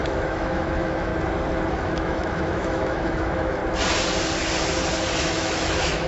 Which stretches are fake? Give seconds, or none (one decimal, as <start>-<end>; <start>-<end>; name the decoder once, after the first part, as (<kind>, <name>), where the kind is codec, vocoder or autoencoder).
0.0-1.1 (autoencoder, DAC-VAE); 1.7-3.6; 5.2-6.1